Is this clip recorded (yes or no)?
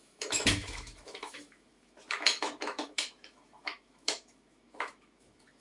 no